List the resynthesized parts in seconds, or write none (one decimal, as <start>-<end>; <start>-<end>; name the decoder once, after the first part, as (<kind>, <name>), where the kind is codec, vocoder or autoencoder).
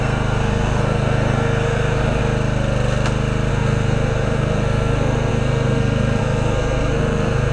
0.0-2.2 (codec, SNAC); 3.5-7.5